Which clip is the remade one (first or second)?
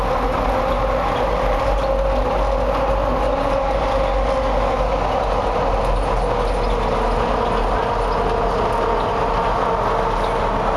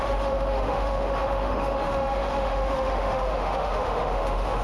second